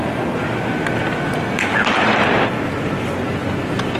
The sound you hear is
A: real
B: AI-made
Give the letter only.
A